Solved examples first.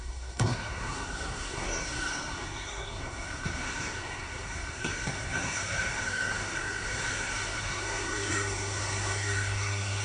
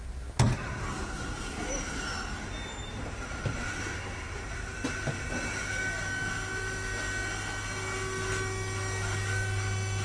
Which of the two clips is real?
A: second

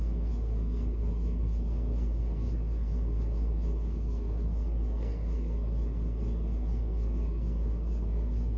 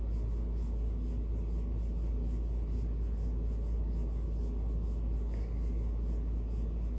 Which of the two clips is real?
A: second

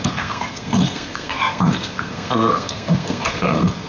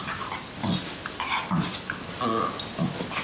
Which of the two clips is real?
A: second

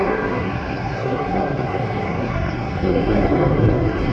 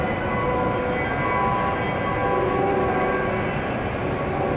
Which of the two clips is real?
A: second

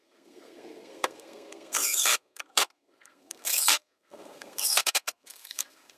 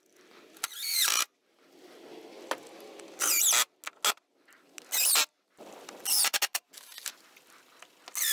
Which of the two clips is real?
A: second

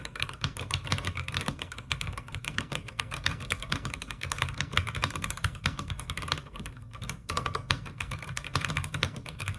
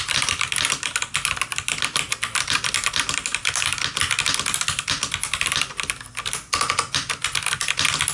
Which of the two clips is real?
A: second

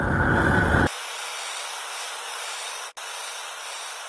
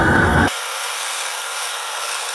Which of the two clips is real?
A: first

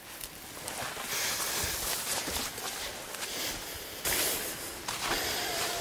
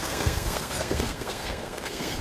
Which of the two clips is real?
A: first